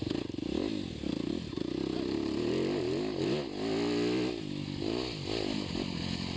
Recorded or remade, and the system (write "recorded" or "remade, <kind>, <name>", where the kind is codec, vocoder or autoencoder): recorded